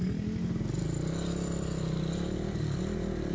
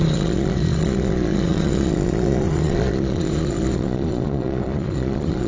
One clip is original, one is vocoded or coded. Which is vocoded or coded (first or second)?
second